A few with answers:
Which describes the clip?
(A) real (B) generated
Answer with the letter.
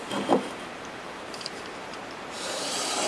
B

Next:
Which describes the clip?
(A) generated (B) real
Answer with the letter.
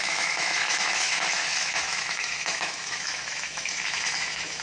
A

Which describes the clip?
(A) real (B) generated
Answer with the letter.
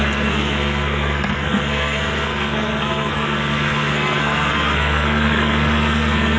B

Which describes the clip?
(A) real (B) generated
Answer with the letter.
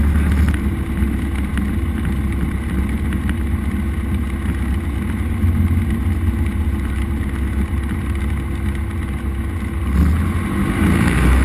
A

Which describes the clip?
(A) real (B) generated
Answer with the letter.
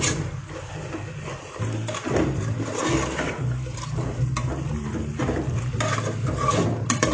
B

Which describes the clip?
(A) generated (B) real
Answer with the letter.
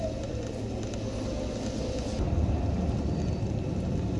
B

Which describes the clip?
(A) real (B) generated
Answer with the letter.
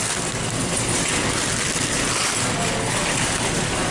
A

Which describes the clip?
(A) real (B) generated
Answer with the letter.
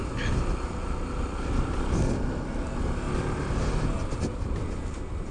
A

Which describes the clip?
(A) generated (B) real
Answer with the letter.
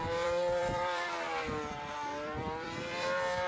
A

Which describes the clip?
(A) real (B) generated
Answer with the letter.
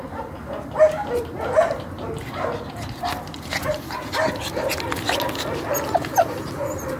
A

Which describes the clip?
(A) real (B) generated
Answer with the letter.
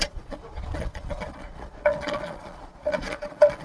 B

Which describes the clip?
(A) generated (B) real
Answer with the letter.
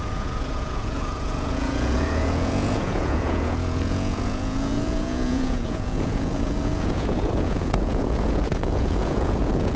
A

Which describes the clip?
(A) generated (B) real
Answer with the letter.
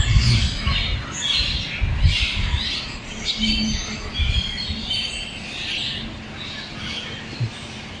B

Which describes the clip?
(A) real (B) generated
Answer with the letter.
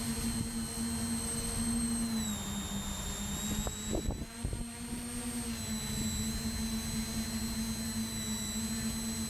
A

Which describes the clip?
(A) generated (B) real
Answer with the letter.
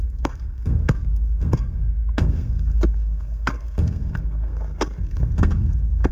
A